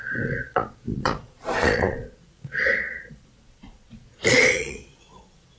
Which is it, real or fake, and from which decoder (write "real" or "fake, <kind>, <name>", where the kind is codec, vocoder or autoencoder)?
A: fake, vocoder, Vocos